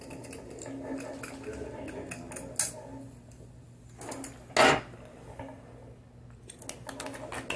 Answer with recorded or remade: recorded